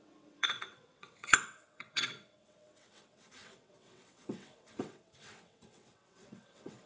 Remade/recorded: remade